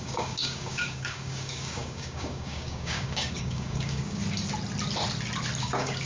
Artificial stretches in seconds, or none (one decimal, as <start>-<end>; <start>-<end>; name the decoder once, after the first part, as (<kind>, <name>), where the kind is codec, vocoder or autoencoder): 0.0-4.2 (codec, DAC); 5.6-6.1